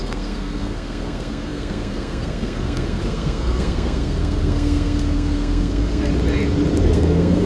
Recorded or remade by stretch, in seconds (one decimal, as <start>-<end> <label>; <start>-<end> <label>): 0.0-6.1 remade; 6.1-6.8 recorded; 6.8-7.5 remade